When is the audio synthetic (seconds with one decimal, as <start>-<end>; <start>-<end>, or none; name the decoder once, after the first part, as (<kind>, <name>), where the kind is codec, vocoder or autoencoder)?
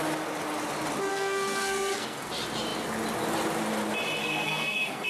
1.1-2.3 (codec, SNAC); 4.2-5.1